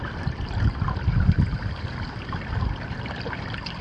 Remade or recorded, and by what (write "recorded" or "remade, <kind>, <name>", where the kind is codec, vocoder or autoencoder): recorded